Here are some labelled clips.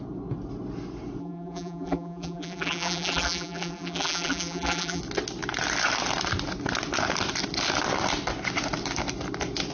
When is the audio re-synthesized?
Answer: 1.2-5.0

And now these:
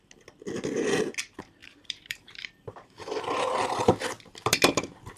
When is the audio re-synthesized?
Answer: 1.6-3.0

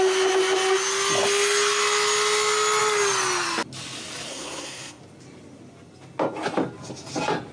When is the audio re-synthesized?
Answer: 4.3-5.0

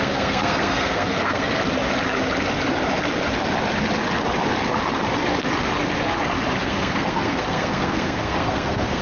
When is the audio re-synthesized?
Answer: 0.0-1.6; 6.6-9.0

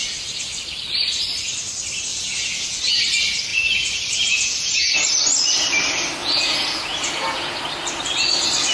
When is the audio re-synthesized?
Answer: 2.1-3.0; 3.5-5.1; 6.2-7.6

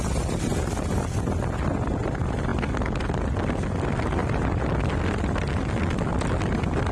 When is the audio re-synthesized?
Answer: none

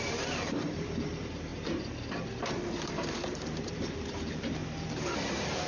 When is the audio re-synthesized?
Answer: 0.0-5.7

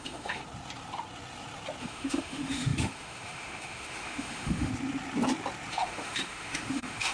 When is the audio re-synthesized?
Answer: 0.0-0.4; 1.8-4.7; 5.7-7.1